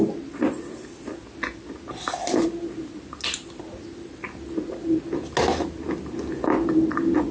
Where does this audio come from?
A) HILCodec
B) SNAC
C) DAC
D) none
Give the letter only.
D